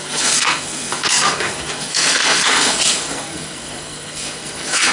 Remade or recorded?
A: remade